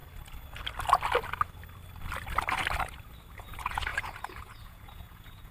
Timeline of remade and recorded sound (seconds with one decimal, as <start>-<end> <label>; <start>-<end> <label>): 0.0-3.3 recorded; 3.3-5.5 remade